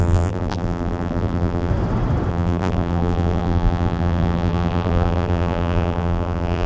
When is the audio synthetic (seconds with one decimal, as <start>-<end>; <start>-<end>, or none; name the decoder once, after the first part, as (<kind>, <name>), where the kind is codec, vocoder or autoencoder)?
0.0-1.7 (vocoder, BigVGAN v2); 2.3-6.7